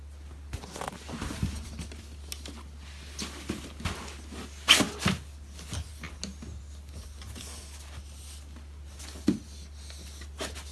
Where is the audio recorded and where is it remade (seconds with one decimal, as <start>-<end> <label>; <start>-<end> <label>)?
0.0-10.7 recorded